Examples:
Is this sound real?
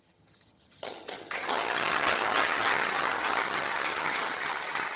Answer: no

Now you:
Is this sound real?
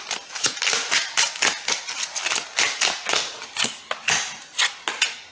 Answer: yes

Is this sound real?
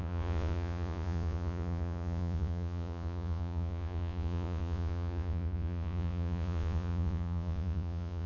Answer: no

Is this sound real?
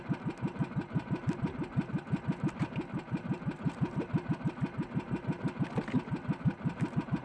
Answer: yes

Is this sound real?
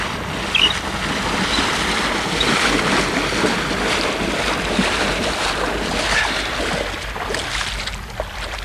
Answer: yes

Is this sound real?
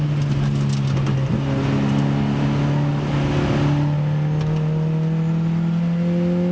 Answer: yes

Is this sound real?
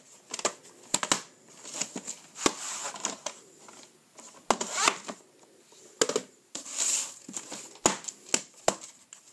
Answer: yes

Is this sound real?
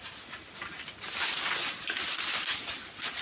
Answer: yes